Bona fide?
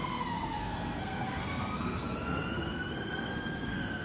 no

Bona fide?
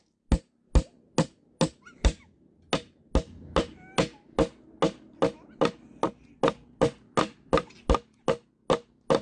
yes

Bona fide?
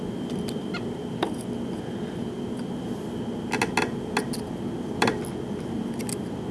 yes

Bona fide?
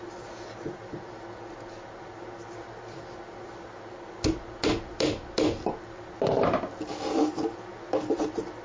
yes